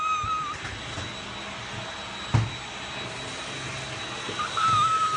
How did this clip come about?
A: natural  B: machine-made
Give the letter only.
A